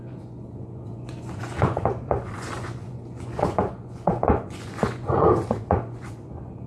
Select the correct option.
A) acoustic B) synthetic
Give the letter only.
B